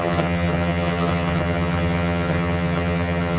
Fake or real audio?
fake